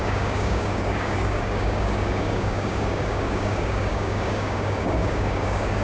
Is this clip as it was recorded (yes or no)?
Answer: no